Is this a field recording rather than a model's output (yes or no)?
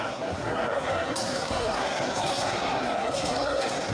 no